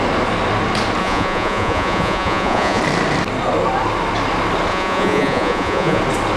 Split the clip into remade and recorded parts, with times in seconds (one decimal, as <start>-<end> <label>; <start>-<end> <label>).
0.0-1.0 recorded; 1.0-2.8 remade; 2.8-4.7 recorded; 4.7-6.0 remade; 6.0-6.4 recorded